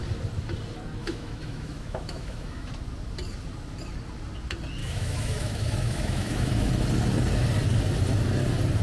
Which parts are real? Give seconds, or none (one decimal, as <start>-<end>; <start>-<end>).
0.0-1.0; 2.7-4.8; 6.7-8.8